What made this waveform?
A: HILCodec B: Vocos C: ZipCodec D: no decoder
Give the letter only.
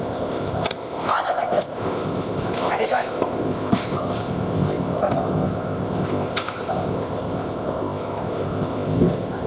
C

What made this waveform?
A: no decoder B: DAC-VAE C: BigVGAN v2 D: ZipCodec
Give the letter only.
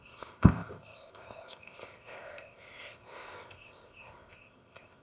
D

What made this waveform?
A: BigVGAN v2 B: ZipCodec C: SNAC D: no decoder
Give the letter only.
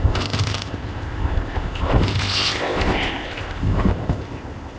B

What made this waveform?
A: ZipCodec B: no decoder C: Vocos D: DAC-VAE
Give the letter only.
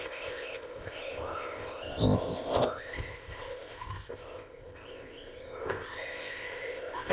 A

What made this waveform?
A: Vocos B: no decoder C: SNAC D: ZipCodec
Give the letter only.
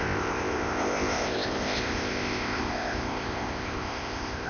D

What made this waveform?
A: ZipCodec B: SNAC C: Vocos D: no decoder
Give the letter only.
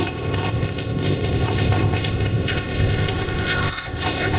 A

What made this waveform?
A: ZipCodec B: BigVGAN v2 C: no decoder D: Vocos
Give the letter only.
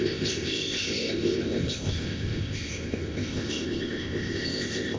A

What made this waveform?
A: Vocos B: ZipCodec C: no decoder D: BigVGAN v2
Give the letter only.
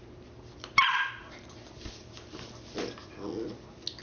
C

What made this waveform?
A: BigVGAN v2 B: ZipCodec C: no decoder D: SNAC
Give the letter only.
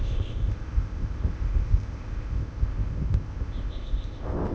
B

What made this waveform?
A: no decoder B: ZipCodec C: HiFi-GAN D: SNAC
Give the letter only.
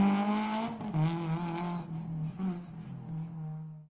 A